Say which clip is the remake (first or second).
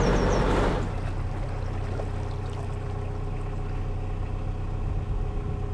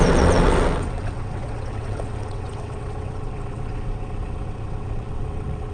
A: second